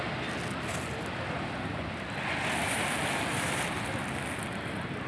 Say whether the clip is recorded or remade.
recorded